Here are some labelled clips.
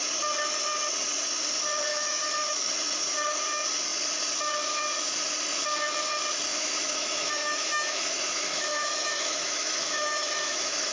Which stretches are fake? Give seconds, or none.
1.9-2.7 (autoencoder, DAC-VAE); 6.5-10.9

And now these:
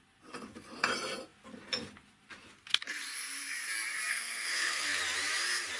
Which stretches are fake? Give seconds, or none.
4.1-5.0 (codec, SNAC)

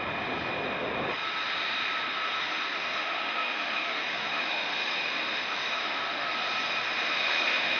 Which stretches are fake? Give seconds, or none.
2.1-6.3 (autoencoder, DAC-VAE); 7.0-7.8

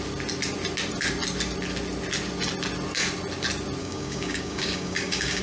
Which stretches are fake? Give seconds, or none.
3.8-5.4 (codec, DAC)

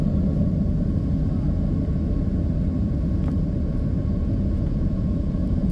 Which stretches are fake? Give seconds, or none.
4.2-5.7 (vocoder, Vocos)

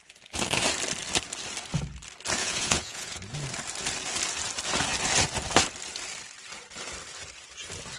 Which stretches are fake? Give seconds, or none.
2.4-3.2 (vocoder, Vocos)